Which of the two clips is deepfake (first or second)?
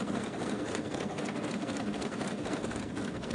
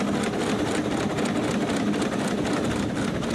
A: first